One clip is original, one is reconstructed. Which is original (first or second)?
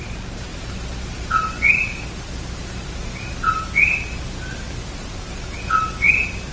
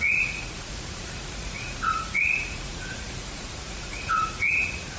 first